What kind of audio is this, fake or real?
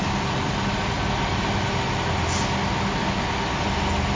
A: real